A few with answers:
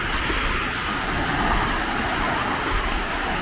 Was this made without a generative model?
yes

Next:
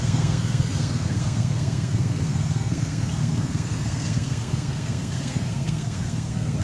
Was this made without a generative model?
no